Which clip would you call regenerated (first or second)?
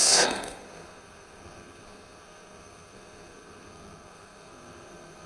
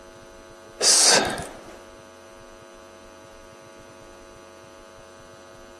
first